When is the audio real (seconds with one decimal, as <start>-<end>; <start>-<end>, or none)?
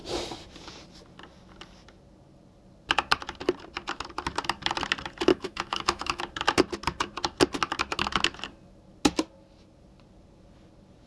0.0-5.3; 6.2-11.1